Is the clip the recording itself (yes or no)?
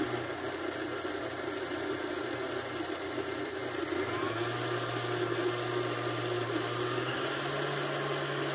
yes